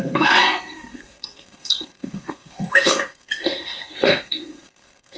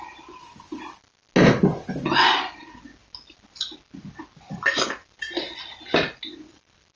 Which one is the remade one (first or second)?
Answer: first